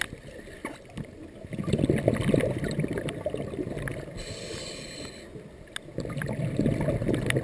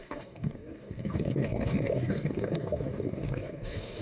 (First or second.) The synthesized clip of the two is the second